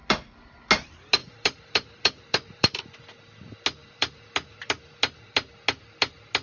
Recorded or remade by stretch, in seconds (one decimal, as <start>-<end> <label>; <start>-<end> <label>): 0.0-1.2 recorded; 1.2-2.8 remade; 2.8-3.8 recorded; 3.8-5.5 remade; 5.5-6.4 recorded